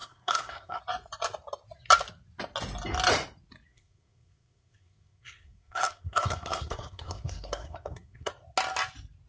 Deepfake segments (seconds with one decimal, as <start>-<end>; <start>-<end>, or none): 0.0-0.8; 3.7-8.3